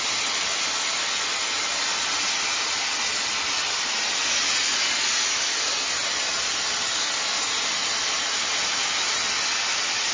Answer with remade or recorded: recorded